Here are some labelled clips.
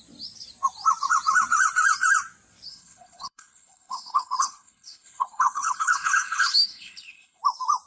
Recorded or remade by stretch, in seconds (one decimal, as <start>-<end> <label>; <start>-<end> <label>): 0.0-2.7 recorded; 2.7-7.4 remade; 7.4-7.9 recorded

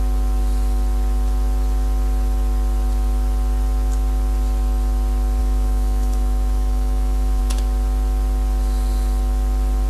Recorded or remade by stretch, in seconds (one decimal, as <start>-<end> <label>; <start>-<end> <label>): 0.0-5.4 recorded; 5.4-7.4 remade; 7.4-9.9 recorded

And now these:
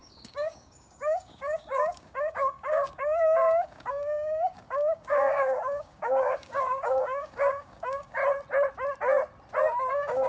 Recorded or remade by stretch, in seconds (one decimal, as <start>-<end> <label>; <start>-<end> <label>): 0.0-8.2 remade; 8.2-9.9 recorded; 9.9-10.3 remade